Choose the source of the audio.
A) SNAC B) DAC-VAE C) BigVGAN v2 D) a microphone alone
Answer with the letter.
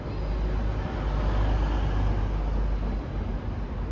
D